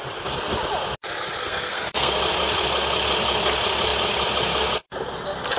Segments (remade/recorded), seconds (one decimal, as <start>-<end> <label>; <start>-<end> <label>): 0.0-1.4 recorded; 1.4-2.2 remade; 2.2-5.6 recorded